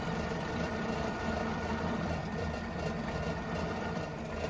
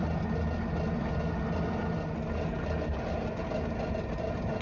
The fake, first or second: first